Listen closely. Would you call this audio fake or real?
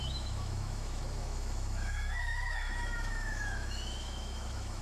fake